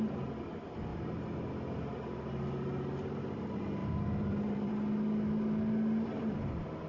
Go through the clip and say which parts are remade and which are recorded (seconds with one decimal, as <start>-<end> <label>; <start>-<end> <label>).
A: 0.0-0.9 recorded; 0.9-1.5 remade; 1.5-3.8 recorded; 3.8-4.7 remade; 4.7-6.9 recorded